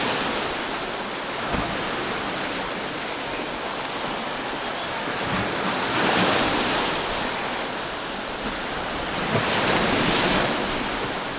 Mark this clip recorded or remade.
recorded